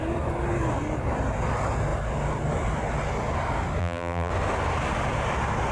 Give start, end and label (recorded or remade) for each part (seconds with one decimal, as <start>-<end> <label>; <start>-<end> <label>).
0.0-3.8 recorded; 3.8-4.3 remade; 4.3-5.7 recorded